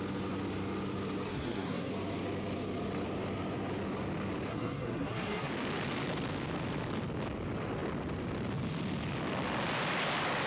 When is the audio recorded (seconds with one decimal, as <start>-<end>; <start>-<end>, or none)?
0.0-1.3; 1.9-4.5; 5.5-10.5